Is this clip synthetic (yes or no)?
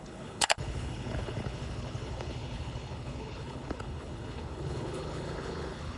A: yes